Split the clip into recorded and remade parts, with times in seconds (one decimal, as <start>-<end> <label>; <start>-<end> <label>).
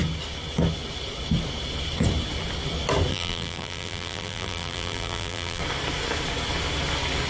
0.0-3.1 recorded; 3.1-5.6 remade; 5.6-7.3 recorded